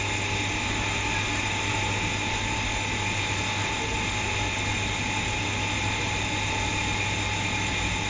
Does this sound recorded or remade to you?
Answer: recorded